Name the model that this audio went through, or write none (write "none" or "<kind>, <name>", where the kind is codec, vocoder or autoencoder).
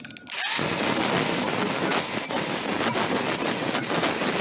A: none